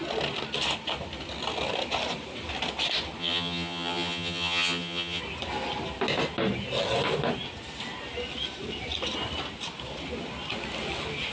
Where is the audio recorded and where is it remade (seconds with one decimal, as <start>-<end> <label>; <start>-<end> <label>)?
0.0-3.2 recorded; 3.2-5.2 remade; 5.2-11.3 recorded